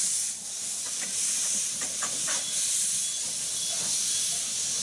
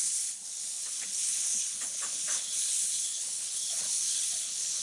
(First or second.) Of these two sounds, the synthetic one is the second